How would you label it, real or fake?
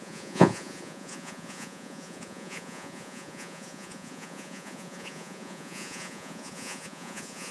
fake